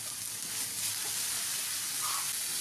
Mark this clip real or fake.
real